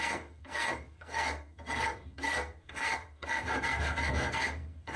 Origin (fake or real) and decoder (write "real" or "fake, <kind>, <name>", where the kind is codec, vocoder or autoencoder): fake, codec, SNAC